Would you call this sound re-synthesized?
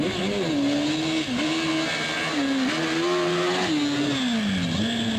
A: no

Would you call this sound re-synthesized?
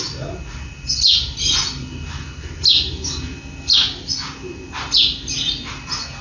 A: no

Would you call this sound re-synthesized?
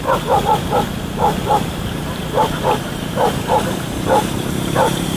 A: yes